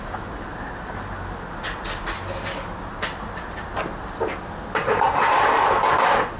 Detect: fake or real real